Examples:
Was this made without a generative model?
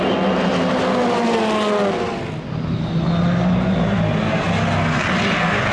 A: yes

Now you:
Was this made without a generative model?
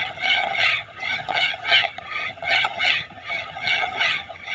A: no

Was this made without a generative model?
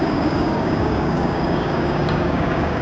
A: no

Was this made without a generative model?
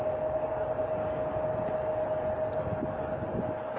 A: yes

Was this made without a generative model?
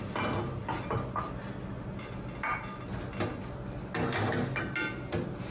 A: yes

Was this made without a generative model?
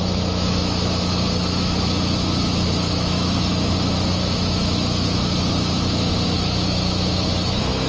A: no